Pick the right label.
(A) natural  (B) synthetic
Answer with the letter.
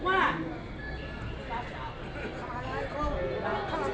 A